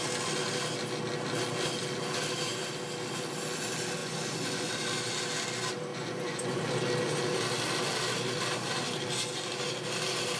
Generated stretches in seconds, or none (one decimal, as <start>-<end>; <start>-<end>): 4.0-4.7; 5.9-6.6